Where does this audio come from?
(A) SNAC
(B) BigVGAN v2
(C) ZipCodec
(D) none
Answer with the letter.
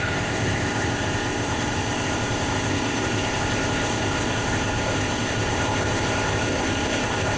C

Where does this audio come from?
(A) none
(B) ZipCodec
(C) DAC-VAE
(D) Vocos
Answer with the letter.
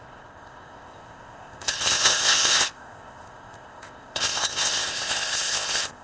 B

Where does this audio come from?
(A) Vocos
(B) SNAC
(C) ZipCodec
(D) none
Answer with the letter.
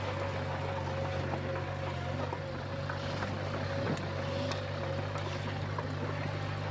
D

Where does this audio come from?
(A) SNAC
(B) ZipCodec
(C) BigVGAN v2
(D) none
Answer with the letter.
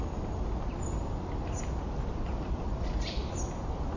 D